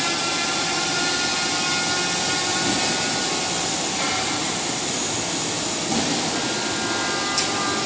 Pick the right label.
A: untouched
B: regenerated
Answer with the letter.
A